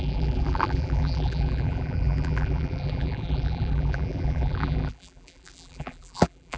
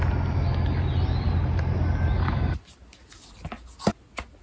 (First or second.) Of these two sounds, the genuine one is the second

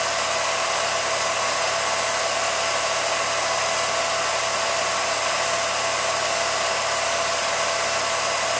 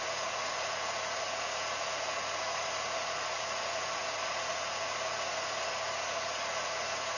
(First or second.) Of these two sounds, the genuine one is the first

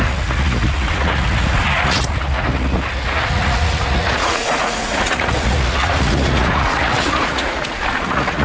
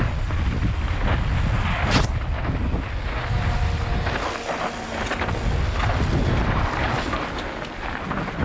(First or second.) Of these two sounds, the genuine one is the second